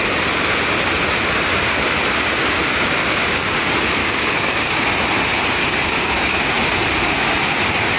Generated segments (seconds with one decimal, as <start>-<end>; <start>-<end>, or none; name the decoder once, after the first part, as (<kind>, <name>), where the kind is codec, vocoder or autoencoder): 3.0-3.6 (codec, DAC); 4.0-4.7; 5.6-6.4